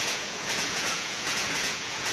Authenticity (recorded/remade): remade